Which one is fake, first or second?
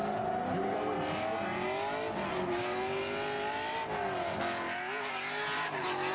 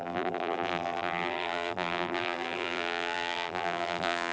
second